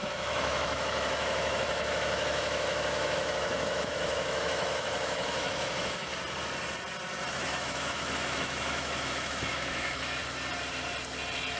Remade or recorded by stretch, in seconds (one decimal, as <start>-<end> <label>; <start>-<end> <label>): 0.0-6.1 remade; 6.1-7.3 recorded; 7.3-10.2 remade; 10.2-11.6 recorded